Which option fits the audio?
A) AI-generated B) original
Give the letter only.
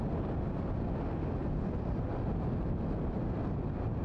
B